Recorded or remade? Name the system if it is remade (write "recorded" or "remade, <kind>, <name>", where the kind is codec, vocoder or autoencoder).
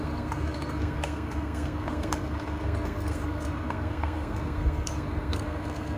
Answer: remade, codec, SNAC